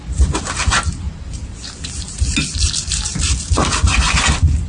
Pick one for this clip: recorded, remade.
recorded